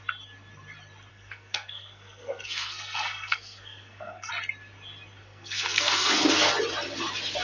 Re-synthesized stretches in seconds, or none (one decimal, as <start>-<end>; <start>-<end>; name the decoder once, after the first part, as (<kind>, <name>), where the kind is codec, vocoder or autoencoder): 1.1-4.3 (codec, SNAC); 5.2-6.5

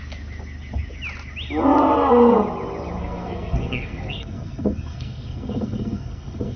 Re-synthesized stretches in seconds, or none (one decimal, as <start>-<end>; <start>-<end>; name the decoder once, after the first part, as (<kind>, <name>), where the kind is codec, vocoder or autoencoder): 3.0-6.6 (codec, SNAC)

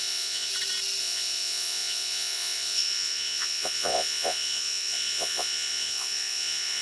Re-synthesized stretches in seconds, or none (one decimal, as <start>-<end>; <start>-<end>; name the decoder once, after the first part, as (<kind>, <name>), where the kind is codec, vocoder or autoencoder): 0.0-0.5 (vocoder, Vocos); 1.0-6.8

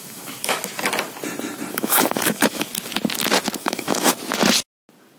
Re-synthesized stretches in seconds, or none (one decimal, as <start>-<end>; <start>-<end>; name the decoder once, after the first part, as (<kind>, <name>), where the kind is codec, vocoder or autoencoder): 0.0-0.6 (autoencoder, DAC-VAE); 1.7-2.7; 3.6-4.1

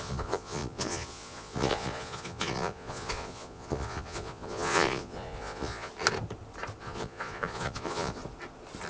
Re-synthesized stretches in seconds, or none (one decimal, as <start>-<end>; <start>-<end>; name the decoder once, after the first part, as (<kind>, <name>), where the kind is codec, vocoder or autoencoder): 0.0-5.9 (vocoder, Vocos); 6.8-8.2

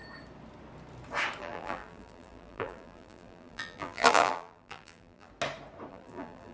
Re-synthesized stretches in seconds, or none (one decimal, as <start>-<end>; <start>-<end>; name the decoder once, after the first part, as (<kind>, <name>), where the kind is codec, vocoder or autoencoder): 1.4-5.3 (vocoder, BigVGAN v2); 5.9-6.5

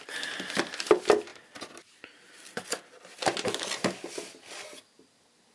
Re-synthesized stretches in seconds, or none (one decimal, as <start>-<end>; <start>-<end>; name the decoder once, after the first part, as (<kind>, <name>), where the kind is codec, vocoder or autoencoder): none

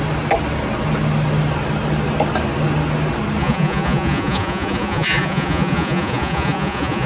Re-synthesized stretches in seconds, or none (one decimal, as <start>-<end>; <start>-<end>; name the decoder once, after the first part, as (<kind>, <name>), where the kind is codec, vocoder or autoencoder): 3.4-7.1 (vocoder, Vocos)